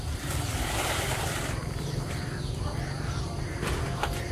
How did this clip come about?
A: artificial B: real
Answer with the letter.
A